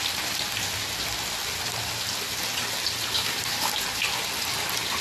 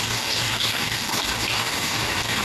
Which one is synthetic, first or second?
second